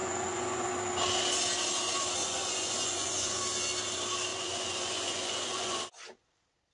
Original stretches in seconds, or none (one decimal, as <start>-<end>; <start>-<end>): 0.7-2.2; 3.4-4.3; 5.8-6.7